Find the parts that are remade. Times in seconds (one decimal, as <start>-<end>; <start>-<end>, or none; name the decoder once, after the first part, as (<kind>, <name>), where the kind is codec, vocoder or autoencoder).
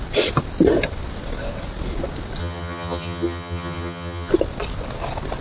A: 2.4-4.3 (vocoder, HiFi-GAN)